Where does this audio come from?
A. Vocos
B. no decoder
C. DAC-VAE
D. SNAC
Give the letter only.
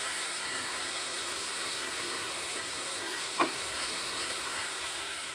D